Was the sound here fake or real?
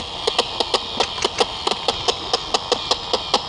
real